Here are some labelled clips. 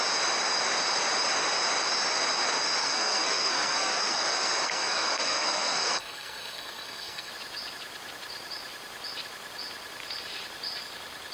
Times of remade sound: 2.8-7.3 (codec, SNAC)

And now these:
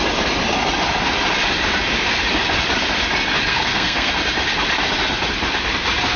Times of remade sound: 3.5-4.1 (codec, SNAC)

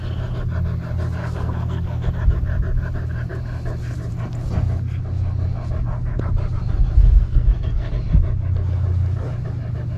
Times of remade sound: 1.2-2.1 (codec, SNAC); 7.0-7.9

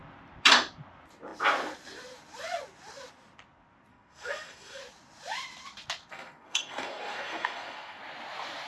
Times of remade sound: 3.9-4.8 (codec, SNAC); 6.1-8.0